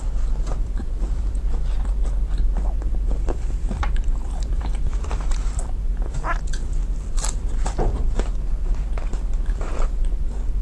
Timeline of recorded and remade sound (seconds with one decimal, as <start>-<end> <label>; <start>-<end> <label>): 0.0-6.6 remade; 6.6-7.8 recorded; 7.8-10.6 remade